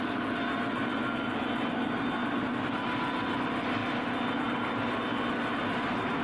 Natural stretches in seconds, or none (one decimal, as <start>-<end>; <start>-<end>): 0.0-6.2